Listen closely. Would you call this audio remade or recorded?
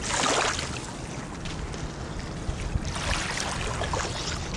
recorded